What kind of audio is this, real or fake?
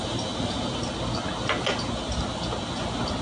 real